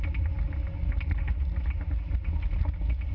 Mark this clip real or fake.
real